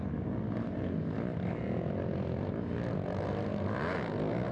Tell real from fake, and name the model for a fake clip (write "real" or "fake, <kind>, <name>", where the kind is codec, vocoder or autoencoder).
real